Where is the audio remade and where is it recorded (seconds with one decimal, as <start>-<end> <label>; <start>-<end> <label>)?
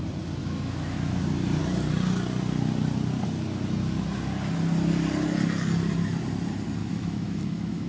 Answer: 0.0-0.4 recorded; 0.4-1.2 remade; 1.2-6.8 recorded; 6.8-7.9 remade